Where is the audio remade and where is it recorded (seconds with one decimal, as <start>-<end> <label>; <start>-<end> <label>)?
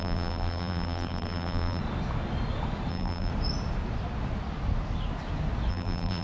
0.0-1.8 remade; 1.8-2.9 recorded; 2.9-3.3 remade; 3.3-5.7 recorded; 5.7-6.2 remade